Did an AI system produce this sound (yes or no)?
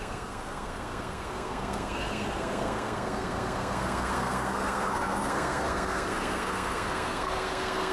yes